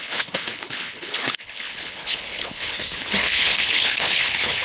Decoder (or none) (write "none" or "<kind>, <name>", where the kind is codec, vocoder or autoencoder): codec, HILCodec